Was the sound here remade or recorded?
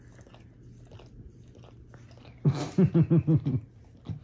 recorded